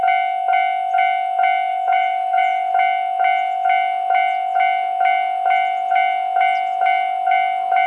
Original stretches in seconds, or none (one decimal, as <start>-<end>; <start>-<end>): 0.0-1.7; 2.7-7.9